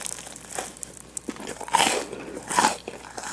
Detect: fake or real real